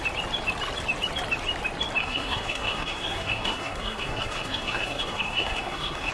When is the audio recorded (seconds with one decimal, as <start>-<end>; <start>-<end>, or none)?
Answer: 0.0-2.0